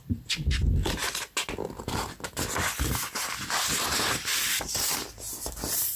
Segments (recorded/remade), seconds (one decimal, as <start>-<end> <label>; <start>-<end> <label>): 0.0-1.0 remade; 1.0-1.8 recorded; 1.8-6.0 remade